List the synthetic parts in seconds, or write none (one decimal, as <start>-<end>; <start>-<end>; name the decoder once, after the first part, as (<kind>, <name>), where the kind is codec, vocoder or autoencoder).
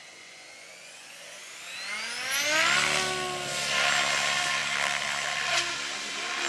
0.0-1.5 (vocoder, Vocos)